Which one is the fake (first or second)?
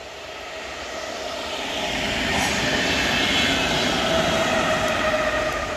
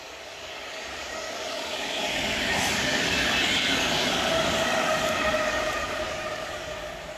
second